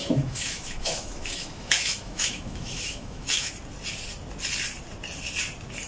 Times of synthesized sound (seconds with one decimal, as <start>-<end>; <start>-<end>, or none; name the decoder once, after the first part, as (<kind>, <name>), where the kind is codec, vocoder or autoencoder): 0.0-3.5 (autoencoder, DAC-VAE)